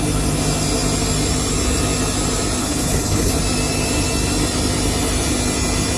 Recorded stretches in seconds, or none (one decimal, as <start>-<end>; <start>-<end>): 0.0-2.6; 3.3-6.0